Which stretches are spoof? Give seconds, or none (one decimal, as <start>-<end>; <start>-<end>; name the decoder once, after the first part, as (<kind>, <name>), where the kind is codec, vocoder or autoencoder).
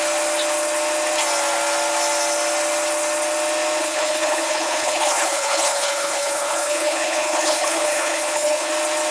3.8-8.7 (codec, HILCodec)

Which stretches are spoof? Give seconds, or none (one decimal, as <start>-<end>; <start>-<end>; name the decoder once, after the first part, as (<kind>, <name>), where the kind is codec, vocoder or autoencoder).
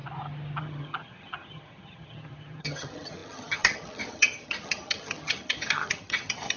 0.6-6.6 (vocoder, HiFi-GAN)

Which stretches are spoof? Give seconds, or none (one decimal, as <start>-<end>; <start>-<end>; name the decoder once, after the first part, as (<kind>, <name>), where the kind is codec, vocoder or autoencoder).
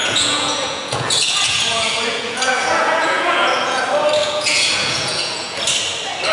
0.0-3.8 (vocoder, Vocos); 4.2-5.6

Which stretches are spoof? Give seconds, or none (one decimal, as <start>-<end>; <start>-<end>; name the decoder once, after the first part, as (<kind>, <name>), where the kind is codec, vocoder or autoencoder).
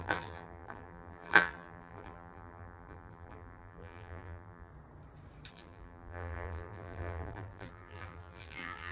0.0-4.7 (vocoder, BigVGAN v2); 5.5-8.9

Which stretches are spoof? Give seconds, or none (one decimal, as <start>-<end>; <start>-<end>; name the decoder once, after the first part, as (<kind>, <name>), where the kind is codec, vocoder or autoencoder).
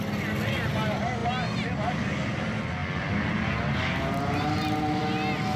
none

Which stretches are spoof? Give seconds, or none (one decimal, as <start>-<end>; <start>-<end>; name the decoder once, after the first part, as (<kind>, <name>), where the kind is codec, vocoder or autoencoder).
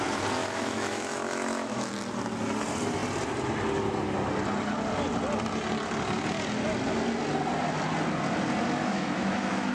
0.4-1.9 (autoencoder, DAC-VAE); 8.8-9.7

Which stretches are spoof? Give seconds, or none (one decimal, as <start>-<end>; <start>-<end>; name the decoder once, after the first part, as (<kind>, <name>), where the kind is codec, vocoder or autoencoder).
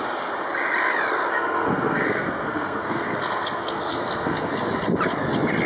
1.3-4.5 (codec, SNAC)